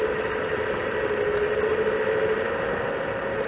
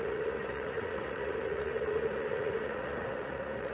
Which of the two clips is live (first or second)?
first